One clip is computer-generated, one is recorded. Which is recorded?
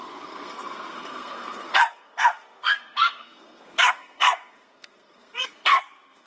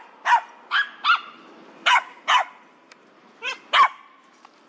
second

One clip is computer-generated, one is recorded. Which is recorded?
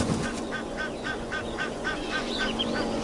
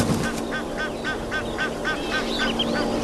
second